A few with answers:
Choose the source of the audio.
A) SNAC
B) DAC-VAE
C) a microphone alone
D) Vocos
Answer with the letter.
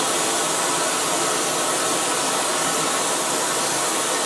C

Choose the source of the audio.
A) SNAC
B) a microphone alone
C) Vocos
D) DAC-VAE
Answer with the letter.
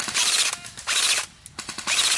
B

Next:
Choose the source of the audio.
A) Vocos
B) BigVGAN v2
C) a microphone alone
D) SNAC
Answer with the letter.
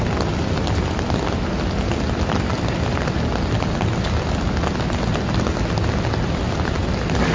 C